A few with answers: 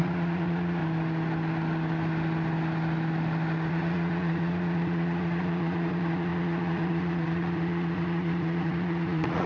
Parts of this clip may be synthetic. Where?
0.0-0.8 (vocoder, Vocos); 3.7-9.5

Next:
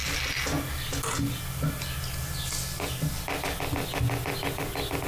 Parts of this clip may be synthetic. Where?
none